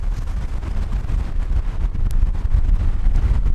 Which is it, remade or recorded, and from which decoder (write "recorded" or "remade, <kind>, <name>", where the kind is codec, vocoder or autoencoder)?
recorded